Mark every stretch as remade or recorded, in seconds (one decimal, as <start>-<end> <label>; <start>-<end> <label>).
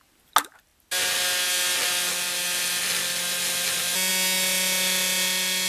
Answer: 0.0-5.7 recorded